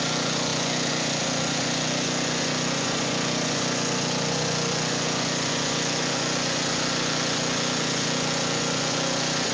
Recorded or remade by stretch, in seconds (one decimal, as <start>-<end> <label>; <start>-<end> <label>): 0.0-9.5 remade